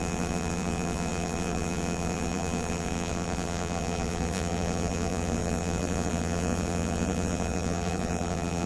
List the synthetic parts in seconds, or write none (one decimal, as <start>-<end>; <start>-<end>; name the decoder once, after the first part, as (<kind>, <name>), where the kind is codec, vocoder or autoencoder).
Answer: 0.0-8.7 (vocoder, BigVGAN v2)